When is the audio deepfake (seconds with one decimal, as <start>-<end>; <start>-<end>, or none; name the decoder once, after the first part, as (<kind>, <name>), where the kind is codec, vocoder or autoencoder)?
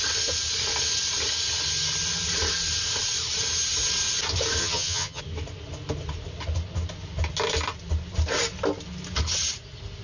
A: 4.6-5.2 (vocoder, HiFi-GAN)